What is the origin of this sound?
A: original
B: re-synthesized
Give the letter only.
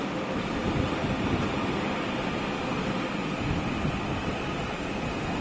A